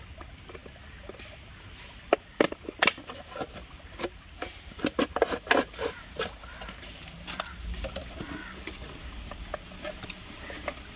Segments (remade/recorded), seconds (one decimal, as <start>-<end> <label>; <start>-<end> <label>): 0.0-8.4 recorded; 8.4-9.0 remade; 9.0-11.0 recorded